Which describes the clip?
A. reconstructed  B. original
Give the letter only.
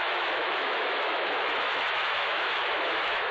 A